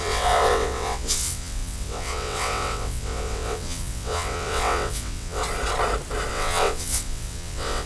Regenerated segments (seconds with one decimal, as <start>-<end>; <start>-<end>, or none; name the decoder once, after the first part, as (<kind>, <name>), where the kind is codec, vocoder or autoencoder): 0.0-5.4 (vocoder, WaveNeXt); 6.3-7.9

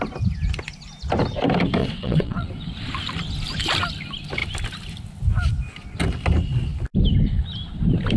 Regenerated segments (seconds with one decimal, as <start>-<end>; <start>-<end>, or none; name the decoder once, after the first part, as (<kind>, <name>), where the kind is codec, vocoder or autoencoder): 1.8-2.5 (vocoder, WaveNeXt)

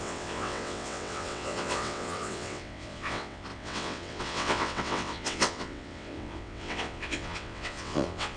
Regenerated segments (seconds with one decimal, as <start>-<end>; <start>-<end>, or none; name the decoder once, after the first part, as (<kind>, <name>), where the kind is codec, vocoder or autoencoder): 0.0-8.4 (vocoder, WaveNeXt)

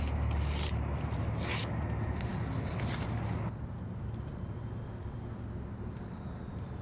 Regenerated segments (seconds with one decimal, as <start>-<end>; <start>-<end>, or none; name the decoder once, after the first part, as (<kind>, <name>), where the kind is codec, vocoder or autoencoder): none